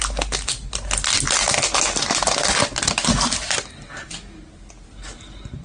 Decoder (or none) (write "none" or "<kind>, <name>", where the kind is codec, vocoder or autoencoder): none